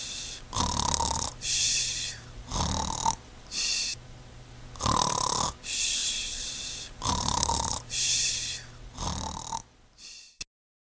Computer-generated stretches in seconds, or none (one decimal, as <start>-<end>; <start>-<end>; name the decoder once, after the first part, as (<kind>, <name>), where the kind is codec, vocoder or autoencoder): 1.3-2.4 (vocoder, BigVGAN v2); 3.9-4.5; 6.0-8.3